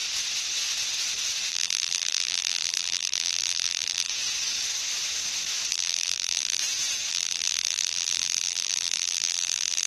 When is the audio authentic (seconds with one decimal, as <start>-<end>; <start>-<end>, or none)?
0.0-1.5; 4.1-5.7; 6.6-7.1